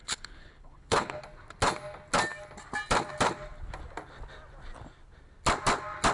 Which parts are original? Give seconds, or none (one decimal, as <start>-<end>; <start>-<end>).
1.2-6.1